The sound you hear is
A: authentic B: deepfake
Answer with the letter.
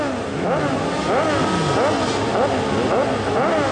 A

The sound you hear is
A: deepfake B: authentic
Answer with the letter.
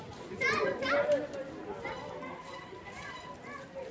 B